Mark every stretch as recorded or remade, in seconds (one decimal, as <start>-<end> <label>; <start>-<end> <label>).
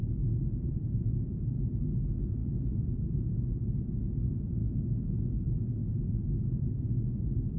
0.0-1.7 remade; 1.7-2.4 recorded; 2.4-3.2 remade; 3.2-5.8 recorded; 5.8-6.8 remade; 6.8-7.6 recorded